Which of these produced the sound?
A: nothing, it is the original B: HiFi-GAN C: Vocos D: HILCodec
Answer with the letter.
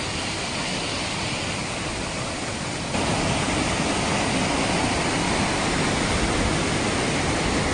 A